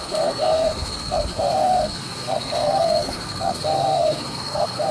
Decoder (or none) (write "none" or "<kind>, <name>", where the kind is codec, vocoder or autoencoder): codec, SNAC